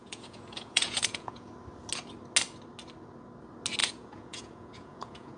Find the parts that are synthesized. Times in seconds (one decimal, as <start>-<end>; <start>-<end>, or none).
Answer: 0.0-1.5; 3.8-5.4